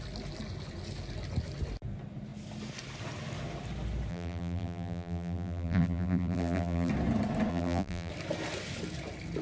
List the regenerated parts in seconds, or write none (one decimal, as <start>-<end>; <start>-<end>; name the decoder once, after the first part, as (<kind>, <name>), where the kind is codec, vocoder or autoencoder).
4.1-6.9 (vocoder, BigVGAN v2); 7.5-8.1